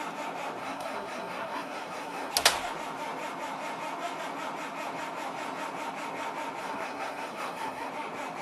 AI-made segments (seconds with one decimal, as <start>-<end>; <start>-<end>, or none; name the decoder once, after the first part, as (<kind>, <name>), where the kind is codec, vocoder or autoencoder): 0.6-2.3 (codec, SNAC); 6.6-7.9